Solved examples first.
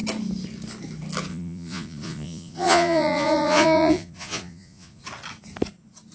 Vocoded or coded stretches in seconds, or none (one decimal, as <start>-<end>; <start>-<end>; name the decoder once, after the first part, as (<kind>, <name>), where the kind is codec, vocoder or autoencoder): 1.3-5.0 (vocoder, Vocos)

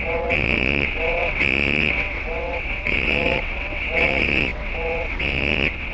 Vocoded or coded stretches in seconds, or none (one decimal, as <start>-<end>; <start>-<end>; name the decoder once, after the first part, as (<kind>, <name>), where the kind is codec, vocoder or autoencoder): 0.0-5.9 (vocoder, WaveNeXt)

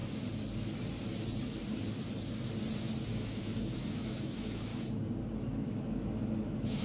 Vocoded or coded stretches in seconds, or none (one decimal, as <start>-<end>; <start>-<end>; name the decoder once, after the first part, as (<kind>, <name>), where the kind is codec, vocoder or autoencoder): 3.1-4.7 (autoencoder, DAC-VAE); 5.7-6.8